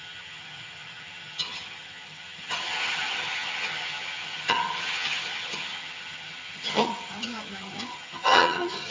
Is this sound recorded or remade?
remade